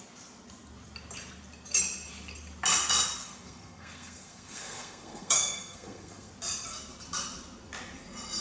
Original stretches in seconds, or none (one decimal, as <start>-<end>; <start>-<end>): 0.0-3.2; 6.3-8.4